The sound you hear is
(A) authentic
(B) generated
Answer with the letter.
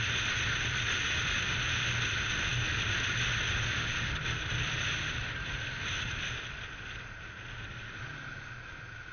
A